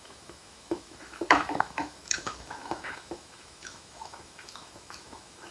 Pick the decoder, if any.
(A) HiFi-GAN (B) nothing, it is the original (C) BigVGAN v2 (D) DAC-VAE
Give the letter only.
D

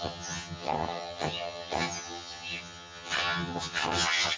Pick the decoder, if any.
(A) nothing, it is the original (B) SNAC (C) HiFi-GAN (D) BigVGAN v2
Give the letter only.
C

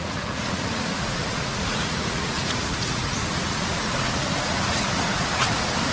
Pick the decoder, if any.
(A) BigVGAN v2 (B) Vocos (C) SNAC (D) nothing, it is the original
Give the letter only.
B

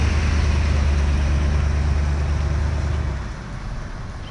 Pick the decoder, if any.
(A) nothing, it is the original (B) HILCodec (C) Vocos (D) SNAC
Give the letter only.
A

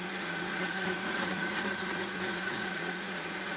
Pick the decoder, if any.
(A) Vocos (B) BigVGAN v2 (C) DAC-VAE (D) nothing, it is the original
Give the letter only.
A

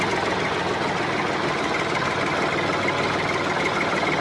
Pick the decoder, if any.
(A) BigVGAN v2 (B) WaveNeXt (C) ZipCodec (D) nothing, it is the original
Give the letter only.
D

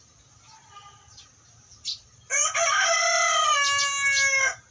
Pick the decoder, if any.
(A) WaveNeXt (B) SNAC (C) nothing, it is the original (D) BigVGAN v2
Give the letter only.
C